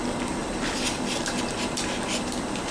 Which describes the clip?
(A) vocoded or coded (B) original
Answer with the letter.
B